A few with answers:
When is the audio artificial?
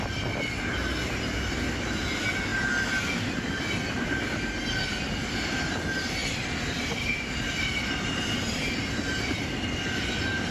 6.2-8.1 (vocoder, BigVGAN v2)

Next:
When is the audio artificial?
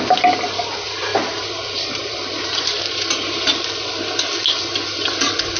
1.1-3.6 (vocoder, BigVGAN v2)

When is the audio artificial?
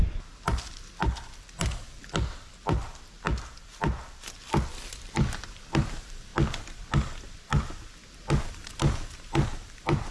0.0-2.0 (vocoder, BigVGAN v2); 4.7-6.3; 8.4-10.1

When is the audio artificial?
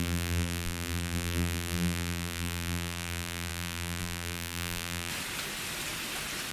0.0-5.1 (vocoder, BigVGAN v2)